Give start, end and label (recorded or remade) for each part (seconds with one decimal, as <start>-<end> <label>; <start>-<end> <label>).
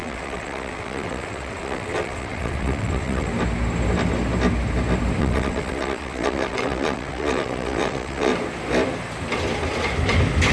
0.0-3.3 remade; 3.3-5.2 recorded; 5.2-8.3 remade; 8.3-10.5 recorded